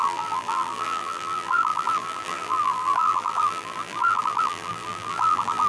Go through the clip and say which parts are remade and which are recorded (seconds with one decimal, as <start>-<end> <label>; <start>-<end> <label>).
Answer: 0.0-5.7 remade